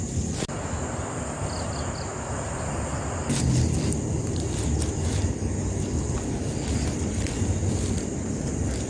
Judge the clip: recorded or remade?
recorded